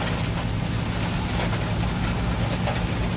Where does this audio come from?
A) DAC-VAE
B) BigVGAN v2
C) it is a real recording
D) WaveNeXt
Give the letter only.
C